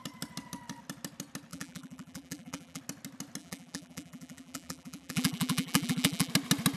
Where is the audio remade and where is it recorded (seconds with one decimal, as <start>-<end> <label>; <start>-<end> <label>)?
0.0-1.5 recorded; 1.5-2.8 remade; 2.8-3.4 recorded; 3.4-6.3 remade; 6.3-6.8 recorded